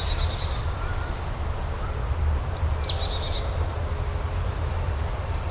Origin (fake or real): real